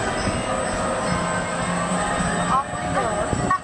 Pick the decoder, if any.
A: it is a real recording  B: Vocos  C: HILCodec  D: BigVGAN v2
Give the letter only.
A